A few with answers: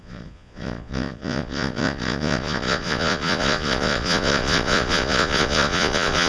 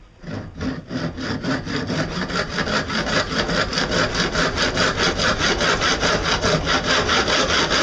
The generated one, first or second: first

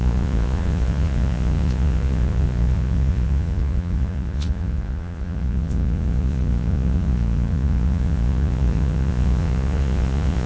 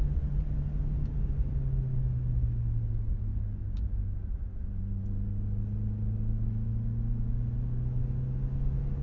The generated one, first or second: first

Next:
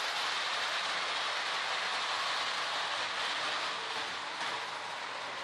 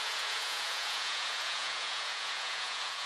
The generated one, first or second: second